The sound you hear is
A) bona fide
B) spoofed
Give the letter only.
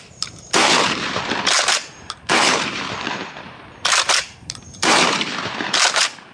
B